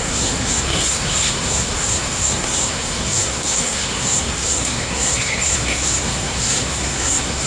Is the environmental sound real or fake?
fake